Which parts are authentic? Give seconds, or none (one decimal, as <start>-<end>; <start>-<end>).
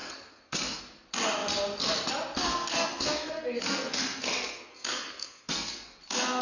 0.8-2.5; 6.0-6.4